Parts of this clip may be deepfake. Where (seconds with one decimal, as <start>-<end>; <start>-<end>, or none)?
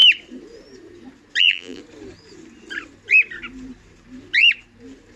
1.4-1.8